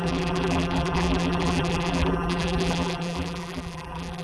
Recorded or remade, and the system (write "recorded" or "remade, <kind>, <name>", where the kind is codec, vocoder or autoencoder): remade, vocoder, BigVGAN v2